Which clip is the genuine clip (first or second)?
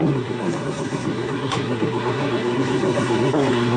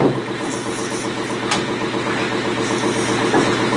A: second